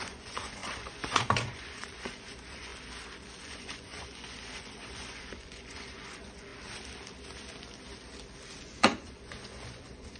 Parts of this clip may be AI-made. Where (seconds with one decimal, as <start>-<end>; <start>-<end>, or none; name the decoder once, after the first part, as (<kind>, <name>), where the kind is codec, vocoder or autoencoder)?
0.0-2.7 (vocoder, Vocos); 3.4-6.5; 8.6-10.2